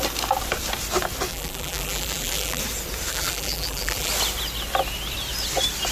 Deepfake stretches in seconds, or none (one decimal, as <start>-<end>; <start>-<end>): 1.3-2.6; 3.1-4.1